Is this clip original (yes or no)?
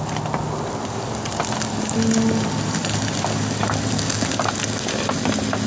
yes